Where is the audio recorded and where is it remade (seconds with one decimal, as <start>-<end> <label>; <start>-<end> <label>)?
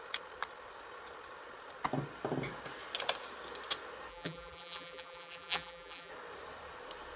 0.0-4.1 recorded; 4.1-6.1 remade; 6.1-7.2 recorded